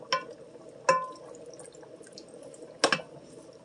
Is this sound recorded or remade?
recorded